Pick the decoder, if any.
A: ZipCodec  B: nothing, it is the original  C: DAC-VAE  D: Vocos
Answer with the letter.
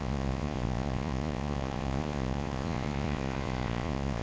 D